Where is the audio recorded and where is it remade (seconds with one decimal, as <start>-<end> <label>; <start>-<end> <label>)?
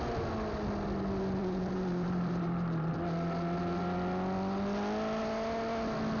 0.0-1.4 recorded; 1.4-2.9 remade; 2.9-6.2 recorded